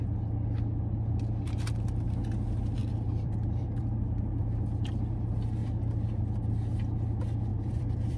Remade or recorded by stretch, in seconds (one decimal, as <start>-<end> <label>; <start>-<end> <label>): 0.0-2.8 recorded; 2.8-3.8 remade; 3.8-7.5 recorded; 7.5-8.2 remade